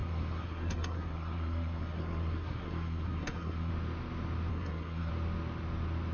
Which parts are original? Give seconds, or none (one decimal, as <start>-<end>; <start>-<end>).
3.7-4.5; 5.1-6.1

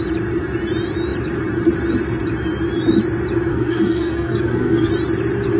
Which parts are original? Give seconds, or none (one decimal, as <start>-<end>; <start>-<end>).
0.0-3.5; 4.9-5.6

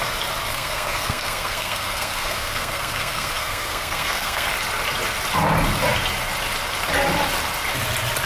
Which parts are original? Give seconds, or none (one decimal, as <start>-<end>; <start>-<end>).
0.0-0.5; 4.5-8.3

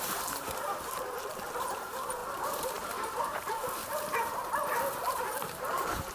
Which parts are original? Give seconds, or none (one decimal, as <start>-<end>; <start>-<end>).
3.8-5.0